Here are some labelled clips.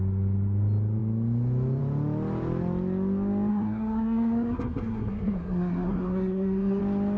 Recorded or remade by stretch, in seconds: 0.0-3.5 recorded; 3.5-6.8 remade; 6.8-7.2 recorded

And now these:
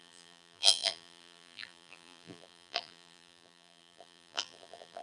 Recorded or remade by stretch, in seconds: 0.0-5.0 remade

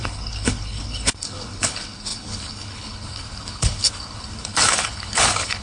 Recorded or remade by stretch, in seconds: 0.0-5.6 remade

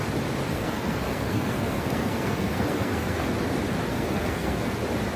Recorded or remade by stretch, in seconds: 0.0-0.5 recorded; 0.5-3.3 remade; 3.3-3.9 recorded; 3.9-4.7 remade; 4.7-5.2 recorded